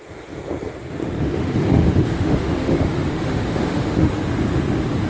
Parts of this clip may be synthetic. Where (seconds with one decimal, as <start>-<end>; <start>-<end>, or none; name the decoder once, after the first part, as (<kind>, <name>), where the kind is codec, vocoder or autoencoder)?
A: 1.0-4.1 (autoencoder, DAC-VAE)